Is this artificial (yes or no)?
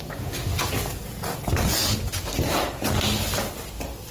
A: no